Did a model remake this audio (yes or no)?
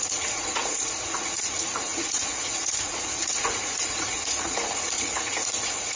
yes